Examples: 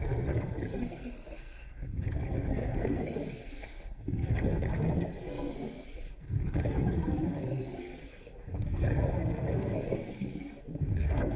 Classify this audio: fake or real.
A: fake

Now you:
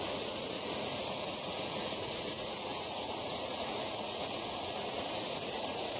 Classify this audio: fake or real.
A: fake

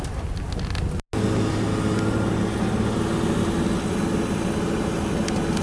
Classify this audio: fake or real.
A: real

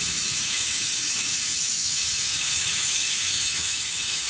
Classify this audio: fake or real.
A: fake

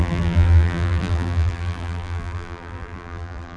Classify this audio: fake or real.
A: fake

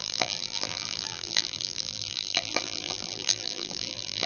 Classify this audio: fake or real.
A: fake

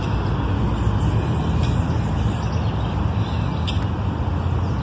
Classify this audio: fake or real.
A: real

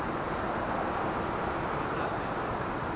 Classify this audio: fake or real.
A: real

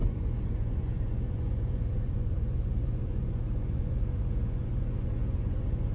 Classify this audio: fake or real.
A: fake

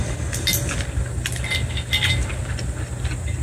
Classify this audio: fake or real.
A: real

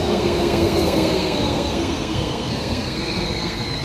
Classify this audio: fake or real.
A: fake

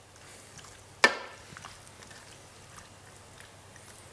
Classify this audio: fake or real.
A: real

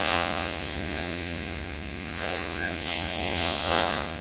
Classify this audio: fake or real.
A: fake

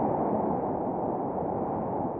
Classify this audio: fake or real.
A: real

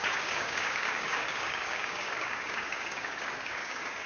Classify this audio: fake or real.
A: fake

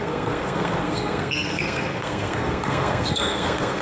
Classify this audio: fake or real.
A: fake